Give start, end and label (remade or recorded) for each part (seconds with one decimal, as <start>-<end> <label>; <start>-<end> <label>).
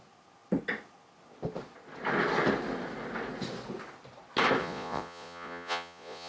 0.0-4.6 recorded; 4.6-6.3 remade